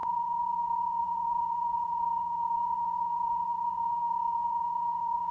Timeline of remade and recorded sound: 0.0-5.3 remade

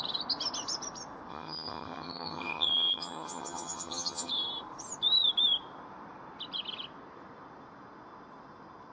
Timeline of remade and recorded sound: 0.0-1.3 recorded; 1.3-4.3 remade; 4.3-8.9 recorded

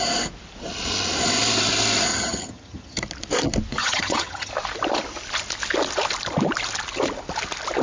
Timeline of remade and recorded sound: 0.0-2.1 recorded; 2.1-3.0 remade; 3.0-3.8 recorded; 3.8-4.5 remade; 4.5-7.8 recorded

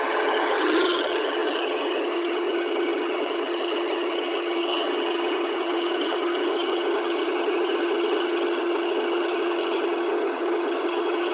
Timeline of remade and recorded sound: 0.0-11.3 remade

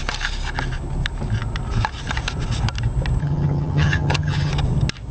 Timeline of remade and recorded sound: 0.0-3.2 recorded; 3.2-4.5 remade; 4.5-5.1 recorded

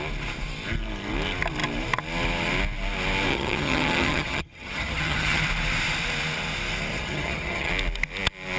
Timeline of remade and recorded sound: 0.0-3.3 recorded; 3.3-5.4 remade; 5.4-6.9 recorded; 6.9-7.7 remade; 7.7-8.6 recorded

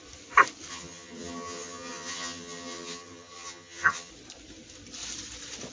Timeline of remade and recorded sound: 0.0-0.7 recorded; 0.7-4.1 remade; 4.1-5.7 recorded

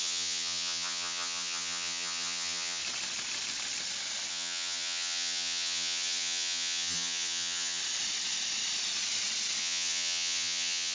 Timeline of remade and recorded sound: 0.0-2.8 remade; 2.8-4.3 recorded; 4.3-7.8 remade; 7.8-9.6 recorded; 9.6-10.9 remade